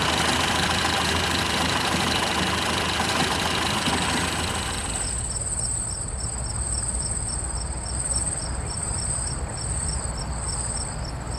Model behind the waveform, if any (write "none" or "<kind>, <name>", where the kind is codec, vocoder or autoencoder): none